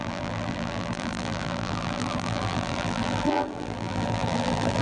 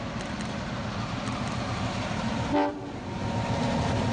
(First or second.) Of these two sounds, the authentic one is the second